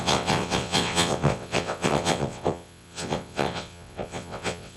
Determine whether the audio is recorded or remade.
remade